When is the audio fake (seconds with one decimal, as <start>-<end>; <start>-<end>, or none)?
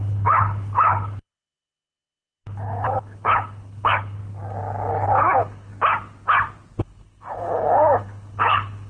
0.0-4.2; 4.9-5.7; 6.8-8.9